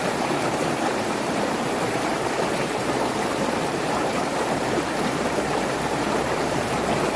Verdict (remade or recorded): remade